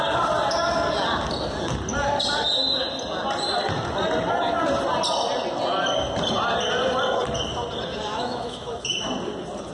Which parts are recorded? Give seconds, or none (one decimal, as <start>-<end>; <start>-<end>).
0.0-8.1; 9.1-9.7